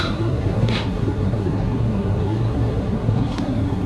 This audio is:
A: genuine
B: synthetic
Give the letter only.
B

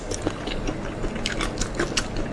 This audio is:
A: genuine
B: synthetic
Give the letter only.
A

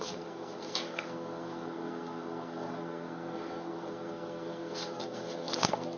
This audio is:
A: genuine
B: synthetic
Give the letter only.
B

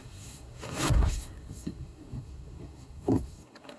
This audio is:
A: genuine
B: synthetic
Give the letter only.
B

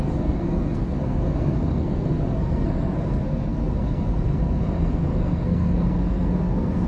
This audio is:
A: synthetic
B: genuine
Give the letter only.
A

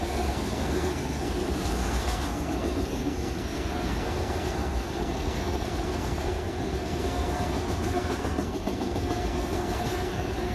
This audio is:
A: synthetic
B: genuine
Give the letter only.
A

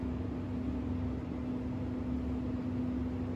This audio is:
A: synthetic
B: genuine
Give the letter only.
B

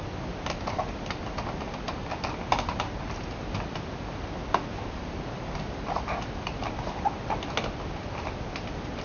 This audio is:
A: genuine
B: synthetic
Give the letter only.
A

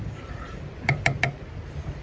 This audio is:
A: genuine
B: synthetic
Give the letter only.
A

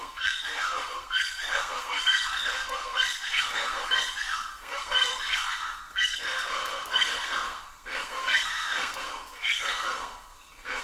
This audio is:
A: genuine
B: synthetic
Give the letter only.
B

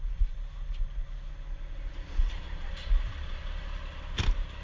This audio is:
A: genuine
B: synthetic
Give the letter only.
A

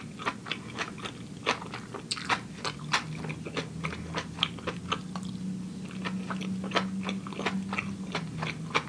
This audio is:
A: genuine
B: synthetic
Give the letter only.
A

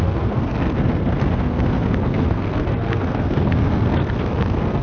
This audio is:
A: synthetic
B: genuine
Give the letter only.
A